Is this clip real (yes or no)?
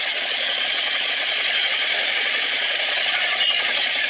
no